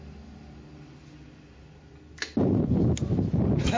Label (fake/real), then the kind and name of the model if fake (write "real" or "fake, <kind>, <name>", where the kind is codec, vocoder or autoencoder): real